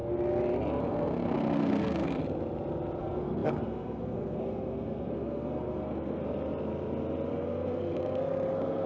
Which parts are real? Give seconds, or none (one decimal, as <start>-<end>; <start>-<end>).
0.0-0.8; 2.2-3.0; 6.2-7.3